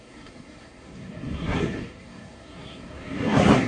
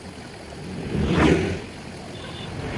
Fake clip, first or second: first